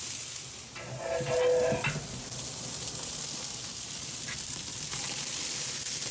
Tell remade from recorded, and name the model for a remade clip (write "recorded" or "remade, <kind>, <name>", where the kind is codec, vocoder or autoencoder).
recorded